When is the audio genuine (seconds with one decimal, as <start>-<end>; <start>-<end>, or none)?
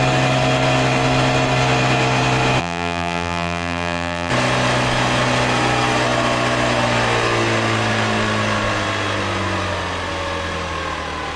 0.0-2.6; 4.3-11.4